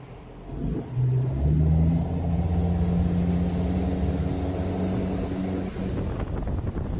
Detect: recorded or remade recorded